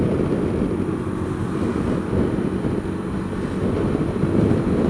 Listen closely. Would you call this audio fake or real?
real